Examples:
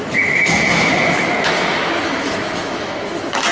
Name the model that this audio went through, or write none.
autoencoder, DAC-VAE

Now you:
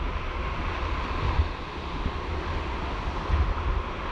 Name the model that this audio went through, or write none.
none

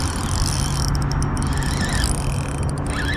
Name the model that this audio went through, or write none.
none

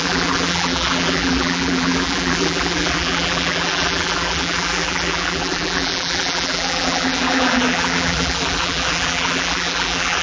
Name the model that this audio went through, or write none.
vocoder, BigVGAN v2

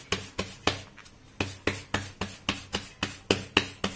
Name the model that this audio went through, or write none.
none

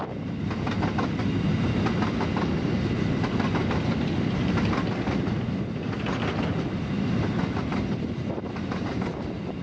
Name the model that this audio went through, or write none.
none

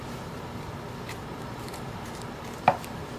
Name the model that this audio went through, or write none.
vocoder, BigVGAN v2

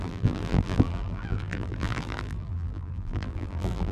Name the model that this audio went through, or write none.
vocoder, BigVGAN v2